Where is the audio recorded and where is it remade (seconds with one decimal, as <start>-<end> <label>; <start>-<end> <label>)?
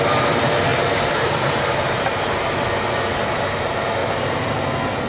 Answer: 0.0-0.7 recorded; 0.7-2.0 remade; 2.0-4.0 recorded; 4.0-4.5 remade; 4.5-5.1 recorded